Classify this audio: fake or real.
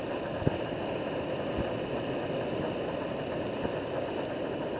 real